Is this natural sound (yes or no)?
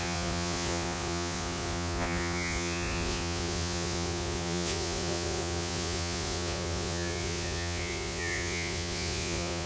no